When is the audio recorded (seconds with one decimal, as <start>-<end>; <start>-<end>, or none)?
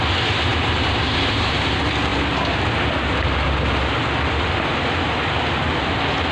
0.0-0.5; 1.6-6.3